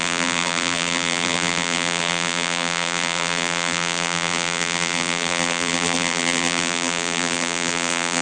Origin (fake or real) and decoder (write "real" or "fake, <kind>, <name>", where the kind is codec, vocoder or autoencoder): fake, vocoder, BigVGAN v2